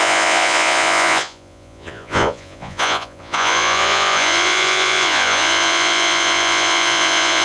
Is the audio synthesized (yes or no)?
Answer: yes